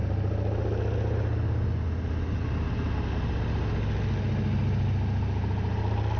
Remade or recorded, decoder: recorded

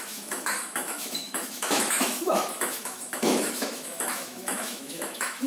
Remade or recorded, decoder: remade, autoencoder, DAC-VAE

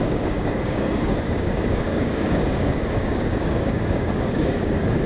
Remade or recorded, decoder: remade, codec, DAC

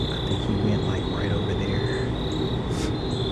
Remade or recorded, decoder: recorded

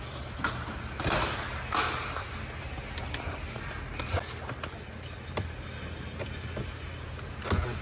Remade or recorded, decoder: recorded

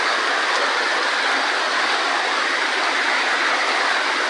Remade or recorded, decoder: recorded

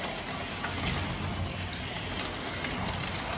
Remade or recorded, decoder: recorded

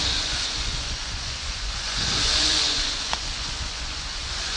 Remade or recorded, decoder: remade, vocoder, Vocos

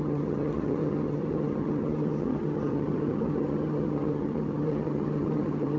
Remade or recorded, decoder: remade, vocoder, HiFi-GAN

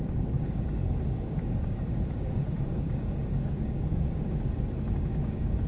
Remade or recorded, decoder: remade, codec, DAC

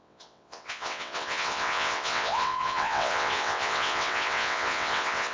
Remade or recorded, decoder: remade, vocoder, WaveNeXt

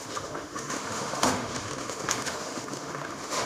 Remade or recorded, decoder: remade, autoencoder, DAC-VAE